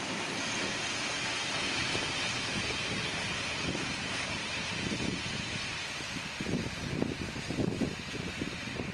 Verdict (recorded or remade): recorded